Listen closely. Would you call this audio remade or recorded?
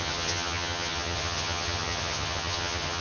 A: remade